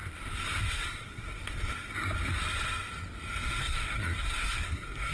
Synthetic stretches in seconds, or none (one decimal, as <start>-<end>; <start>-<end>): 0.7-1.4; 3.6-5.1